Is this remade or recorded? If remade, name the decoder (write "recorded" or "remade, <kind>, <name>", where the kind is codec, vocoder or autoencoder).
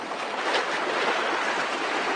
recorded